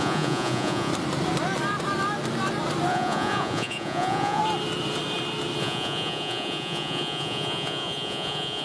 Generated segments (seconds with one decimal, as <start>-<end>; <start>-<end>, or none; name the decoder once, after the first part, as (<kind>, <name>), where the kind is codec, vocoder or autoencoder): 0.0-0.9 (vocoder, Vocos); 2.9-4.4; 5.6-8.6